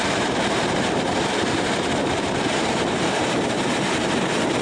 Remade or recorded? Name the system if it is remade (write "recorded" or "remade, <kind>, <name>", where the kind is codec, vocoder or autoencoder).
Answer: remade, vocoder, BigVGAN v2